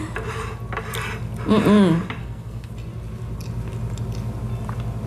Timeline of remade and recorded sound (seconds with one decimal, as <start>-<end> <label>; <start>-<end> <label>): 0.0-2.2 recorded; 2.2-2.7 remade; 2.7-5.1 recorded